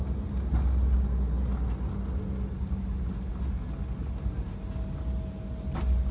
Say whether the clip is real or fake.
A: real